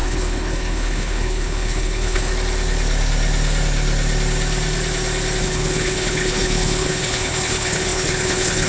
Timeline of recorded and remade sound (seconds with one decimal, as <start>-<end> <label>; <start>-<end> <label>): 0.0-2.3 remade; 2.3-5.4 recorded; 5.4-8.7 remade